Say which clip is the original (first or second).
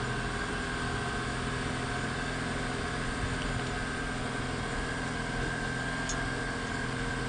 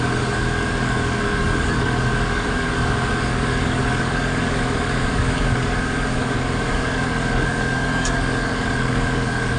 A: first